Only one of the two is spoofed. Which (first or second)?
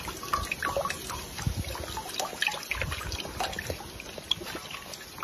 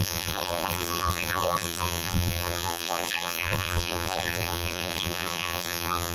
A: second